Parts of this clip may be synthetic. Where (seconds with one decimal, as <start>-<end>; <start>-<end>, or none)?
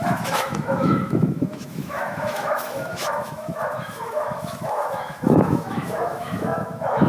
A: 0.0-7.1